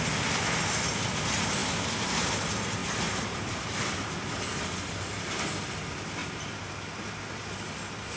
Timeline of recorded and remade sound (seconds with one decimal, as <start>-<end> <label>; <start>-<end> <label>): 0.0-1.6 recorded; 1.6-2.3 remade; 2.3-2.8 recorded; 2.8-5.4 remade; 5.4-6.2 recorded; 6.2-7.2 remade; 7.2-8.2 recorded